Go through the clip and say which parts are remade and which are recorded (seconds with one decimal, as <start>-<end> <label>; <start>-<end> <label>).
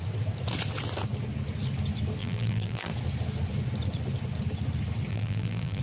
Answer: 0.0-2.2 recorded; 2.2-2.9 remade; 2.9-5.1 recorded; 5.1-5.8 remade